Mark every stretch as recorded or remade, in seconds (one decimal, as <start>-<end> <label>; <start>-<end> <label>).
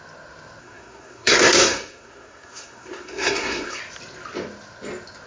0.0-0.6 recorded; 0.6-3.8 remade; 3.8-5.3 recorded